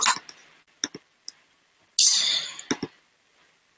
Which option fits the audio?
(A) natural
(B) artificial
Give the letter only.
A